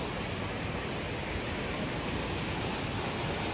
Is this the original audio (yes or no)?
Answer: yes